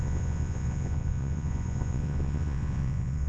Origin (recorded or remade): remade